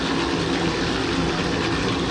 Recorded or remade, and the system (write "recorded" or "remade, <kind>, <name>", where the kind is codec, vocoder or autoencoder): recorded